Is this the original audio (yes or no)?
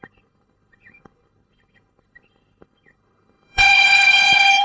no